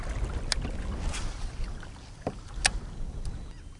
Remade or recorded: recorded